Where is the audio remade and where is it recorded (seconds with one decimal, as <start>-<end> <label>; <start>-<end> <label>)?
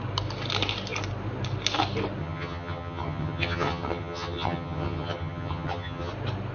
0.0-2.2 recorded; 2.2-6.1 remade; 6.1-6.5 recorded